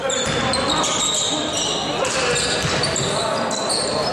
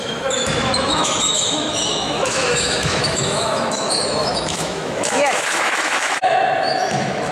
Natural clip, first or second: first